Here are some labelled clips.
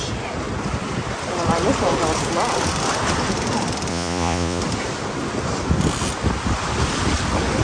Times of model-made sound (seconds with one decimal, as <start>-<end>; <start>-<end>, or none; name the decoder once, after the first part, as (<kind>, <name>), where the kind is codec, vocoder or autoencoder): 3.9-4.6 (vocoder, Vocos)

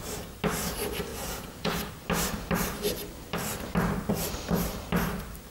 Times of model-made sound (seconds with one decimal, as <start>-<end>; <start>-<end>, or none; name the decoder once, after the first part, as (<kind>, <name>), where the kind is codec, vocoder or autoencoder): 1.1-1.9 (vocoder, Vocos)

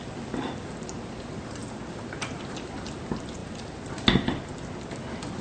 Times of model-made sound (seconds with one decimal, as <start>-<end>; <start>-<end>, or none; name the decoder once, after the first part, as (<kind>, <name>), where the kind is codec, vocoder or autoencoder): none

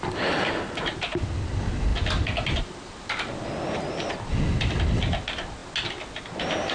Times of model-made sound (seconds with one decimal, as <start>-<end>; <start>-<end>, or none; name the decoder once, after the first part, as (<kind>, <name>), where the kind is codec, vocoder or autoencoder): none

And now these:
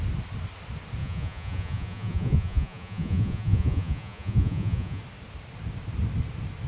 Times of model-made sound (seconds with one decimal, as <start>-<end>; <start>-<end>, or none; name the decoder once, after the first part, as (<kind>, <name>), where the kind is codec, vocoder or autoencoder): 1.0-5.0 (vocoder, Vocos)